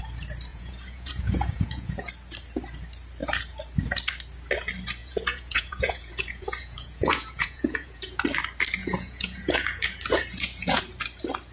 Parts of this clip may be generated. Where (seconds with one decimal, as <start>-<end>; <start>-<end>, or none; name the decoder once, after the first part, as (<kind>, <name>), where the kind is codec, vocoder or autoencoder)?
0.5-2.1 (vocoder, Vocos); 5.0-8.2; 8.8-10.8